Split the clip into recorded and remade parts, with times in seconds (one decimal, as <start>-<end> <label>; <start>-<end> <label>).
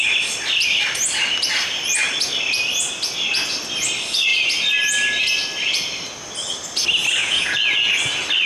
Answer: 0.0-7.2 recorded; 7.2-7.9 remade; 7.9-8.5 recorded